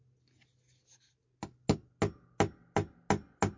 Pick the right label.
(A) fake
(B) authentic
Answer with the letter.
B